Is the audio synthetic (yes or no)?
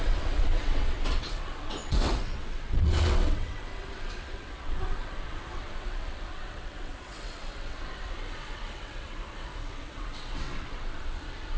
yes